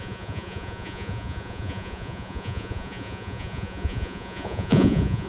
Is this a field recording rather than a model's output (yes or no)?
no